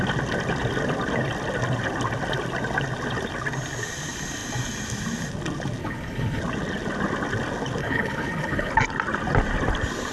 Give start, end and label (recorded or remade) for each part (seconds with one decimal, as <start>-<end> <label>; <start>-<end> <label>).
0.0-5.8 recorded; 5.8-6.4 remade; 6.4-7.8 recorded; 7.8-8.7 remade; 8.7-10.1 recorded

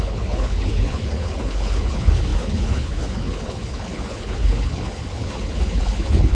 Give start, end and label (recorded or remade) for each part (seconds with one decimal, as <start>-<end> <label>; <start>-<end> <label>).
0.0-6.3 remade